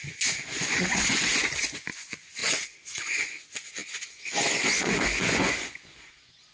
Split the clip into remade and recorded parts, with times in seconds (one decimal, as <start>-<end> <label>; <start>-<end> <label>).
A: 0.0-6.5 remade